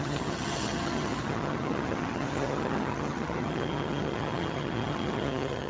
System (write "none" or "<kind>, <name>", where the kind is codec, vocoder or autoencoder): vocoder, HiFi-GAN